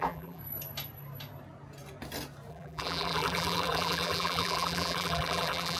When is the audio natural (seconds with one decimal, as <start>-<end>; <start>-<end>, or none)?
0.4-2.5